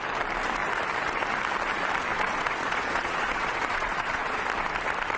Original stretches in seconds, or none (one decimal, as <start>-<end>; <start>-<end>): 0.0-2.1; 4.4-5.2